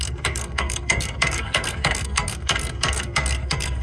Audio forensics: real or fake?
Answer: fake